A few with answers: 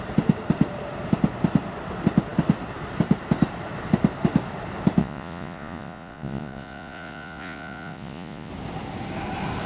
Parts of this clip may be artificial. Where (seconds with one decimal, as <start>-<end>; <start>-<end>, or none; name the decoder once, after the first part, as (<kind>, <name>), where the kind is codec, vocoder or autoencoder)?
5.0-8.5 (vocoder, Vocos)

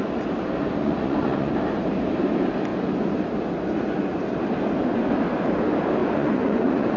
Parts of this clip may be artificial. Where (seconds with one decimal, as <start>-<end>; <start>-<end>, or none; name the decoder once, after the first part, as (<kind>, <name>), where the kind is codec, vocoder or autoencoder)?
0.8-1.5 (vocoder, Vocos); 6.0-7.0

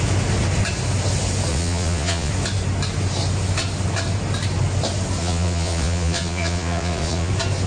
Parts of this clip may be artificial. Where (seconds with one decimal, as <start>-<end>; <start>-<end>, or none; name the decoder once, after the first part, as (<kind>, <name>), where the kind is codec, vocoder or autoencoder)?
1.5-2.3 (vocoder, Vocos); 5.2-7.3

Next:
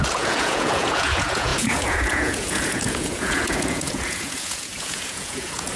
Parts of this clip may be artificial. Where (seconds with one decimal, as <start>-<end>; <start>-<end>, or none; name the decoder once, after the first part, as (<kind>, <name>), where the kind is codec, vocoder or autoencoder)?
0.0-5.8 (vocoder, Vocos)